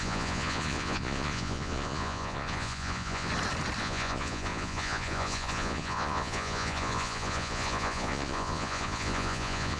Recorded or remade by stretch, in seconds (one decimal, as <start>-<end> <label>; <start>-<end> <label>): 0.0-3.3 remade; 3.3-3.8 recorded; 3.8-9.8 remade